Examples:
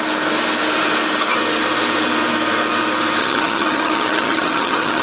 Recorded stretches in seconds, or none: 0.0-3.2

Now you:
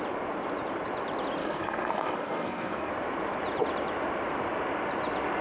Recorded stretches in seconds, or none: 0.0-1.4; 2.9-5.4

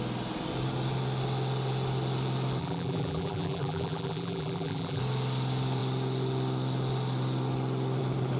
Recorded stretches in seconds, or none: 0.0-2.6; 5.0-8.4

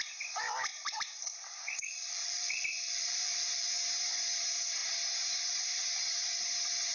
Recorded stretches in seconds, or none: 0.0-0.7; 3.7-6.9